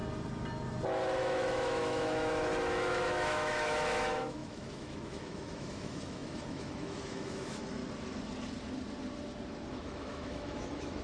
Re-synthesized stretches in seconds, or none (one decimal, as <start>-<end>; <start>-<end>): 1.2-7.8; 9.7-11.0